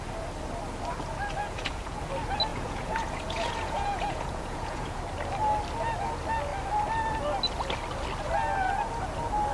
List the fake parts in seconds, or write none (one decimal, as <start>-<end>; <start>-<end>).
1.4-2.0; 2.5-5.0